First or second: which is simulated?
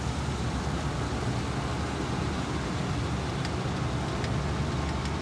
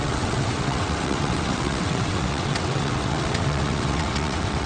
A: second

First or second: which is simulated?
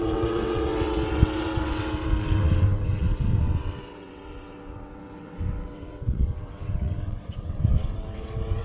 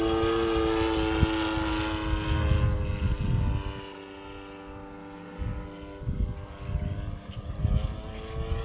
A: first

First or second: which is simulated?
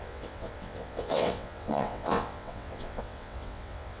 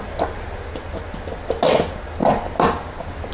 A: first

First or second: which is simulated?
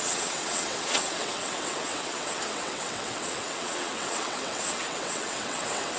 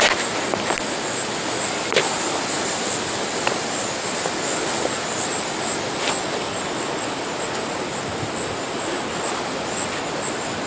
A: first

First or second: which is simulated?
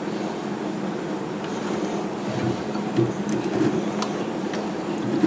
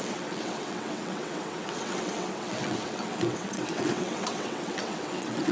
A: second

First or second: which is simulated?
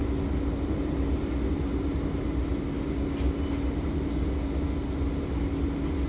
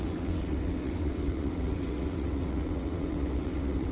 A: second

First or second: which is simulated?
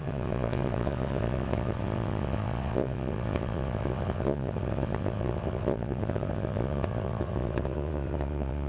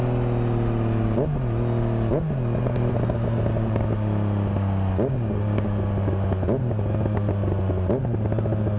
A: first